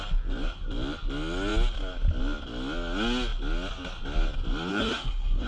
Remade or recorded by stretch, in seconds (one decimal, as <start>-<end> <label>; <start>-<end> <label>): 0.0-4.7 recorded; 4.7-5.5 remade